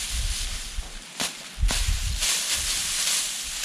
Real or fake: real